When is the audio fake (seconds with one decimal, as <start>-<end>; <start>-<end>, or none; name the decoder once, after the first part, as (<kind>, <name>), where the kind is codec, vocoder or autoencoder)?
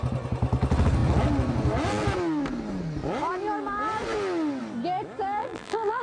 5.4-6.0 (vocoder, BigVGAN v2)